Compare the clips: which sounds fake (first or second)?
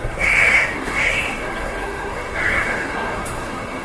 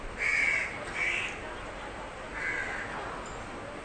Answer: first